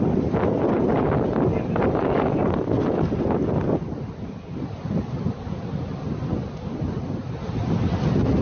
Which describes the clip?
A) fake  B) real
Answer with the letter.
B